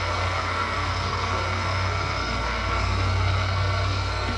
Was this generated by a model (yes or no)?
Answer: yes